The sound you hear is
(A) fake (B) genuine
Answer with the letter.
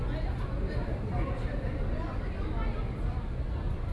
B